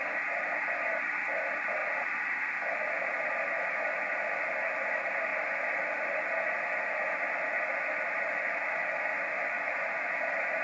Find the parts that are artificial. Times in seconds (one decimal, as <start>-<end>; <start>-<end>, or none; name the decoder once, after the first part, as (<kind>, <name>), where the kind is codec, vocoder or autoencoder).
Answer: none